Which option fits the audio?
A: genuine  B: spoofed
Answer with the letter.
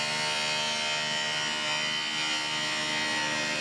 A